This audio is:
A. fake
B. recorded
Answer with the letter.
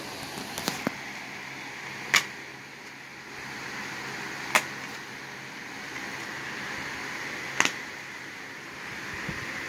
B